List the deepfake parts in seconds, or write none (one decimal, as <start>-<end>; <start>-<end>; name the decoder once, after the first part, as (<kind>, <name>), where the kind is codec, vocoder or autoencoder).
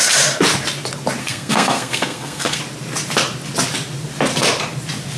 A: 1.2-2.6 (codec, SNAC)